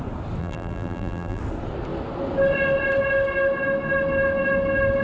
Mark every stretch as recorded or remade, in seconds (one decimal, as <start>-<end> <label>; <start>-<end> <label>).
0.0-0.4 recorded; 0.4-1.4 remade; 1.4-5.0 recorded